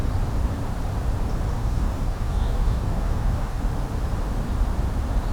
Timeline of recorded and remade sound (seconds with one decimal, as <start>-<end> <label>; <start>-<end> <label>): 0.0-1.6 recorded; 1.6-3.6 remade; 3.6-5.3 recorded